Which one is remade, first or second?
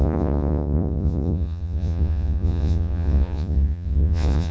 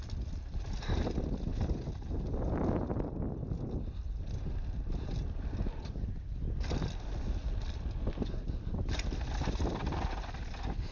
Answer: first